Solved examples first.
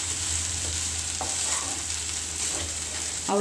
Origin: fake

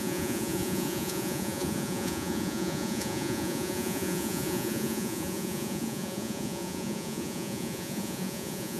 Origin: fake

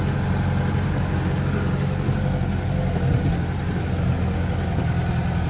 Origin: real